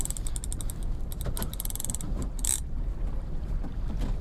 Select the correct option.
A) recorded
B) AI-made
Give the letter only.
A